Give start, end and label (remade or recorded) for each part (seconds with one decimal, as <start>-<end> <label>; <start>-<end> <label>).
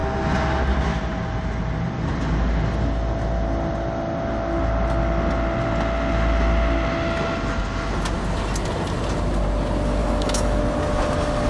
0.0-10.0 recorded; 10.0-10.6 remade; 10.6-11.5 recorded